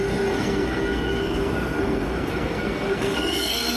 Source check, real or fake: fake